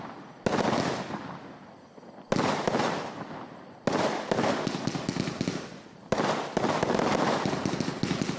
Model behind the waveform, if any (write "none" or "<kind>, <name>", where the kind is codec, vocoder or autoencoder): none